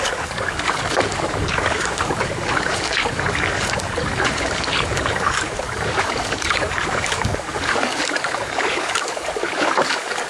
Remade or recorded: remade